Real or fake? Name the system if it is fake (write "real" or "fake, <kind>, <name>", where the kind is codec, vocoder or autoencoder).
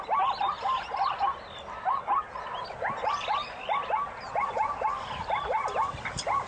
real